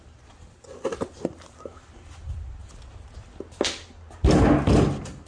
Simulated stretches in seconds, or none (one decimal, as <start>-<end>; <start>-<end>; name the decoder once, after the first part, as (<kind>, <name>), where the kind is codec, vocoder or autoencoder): none

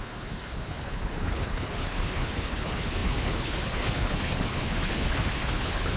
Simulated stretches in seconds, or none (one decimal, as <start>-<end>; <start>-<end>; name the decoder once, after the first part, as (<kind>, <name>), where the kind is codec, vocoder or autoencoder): 0.0-6.0 (codec, HILCodec)

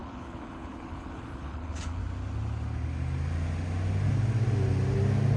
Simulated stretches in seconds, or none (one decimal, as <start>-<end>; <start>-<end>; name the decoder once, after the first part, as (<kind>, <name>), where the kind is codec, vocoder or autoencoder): 0.0-2.0 (codec, HILCodec)

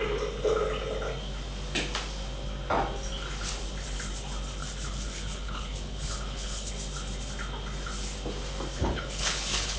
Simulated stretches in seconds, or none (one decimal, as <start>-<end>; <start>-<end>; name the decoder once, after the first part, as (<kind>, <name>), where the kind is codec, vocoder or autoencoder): 4.6-6.7 (codec, HILCodec); 8.8-9.8

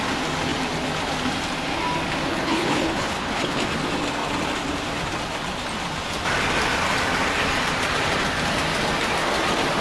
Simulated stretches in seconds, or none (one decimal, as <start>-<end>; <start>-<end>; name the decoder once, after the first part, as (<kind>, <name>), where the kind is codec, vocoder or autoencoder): 2.3-3.6 (codec, HILCodec)

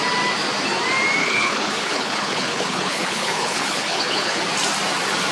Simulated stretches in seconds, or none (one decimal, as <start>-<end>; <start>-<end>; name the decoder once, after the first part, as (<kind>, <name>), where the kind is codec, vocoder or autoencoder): 1.2-4.4 (codec, HILCodec)

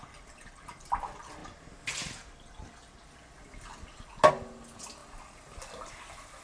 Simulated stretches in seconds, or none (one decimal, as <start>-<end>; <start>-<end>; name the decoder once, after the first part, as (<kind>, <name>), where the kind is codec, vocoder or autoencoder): none

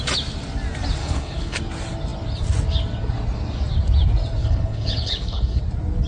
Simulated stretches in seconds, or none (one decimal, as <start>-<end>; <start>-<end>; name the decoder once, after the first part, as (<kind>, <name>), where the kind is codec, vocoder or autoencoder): 1.0-1.6 (codec, HILCodec); 4.4-5.6